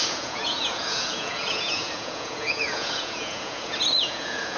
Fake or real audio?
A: fake